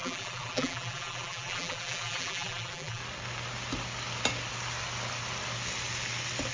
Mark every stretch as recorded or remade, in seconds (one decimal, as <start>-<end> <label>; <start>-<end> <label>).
0.0-3.0 remade; 3.0-6.5 recorded